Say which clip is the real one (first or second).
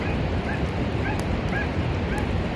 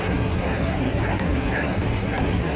first